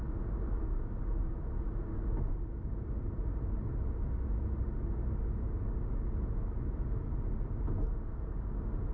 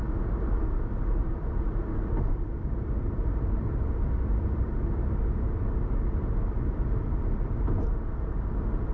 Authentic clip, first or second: first